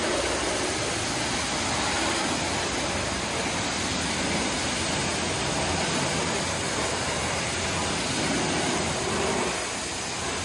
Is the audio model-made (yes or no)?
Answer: no